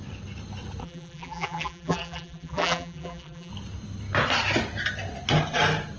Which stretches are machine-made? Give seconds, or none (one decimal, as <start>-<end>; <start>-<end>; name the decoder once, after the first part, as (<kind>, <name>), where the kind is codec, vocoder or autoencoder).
0.8-3.5 (vocoder, BigVGAN v2)